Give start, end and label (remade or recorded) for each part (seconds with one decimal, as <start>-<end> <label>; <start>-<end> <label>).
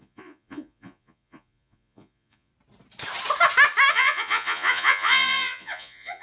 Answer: 0.0-2.5 remade; 2.5-3.9 recorded; 3.9-6.2 remade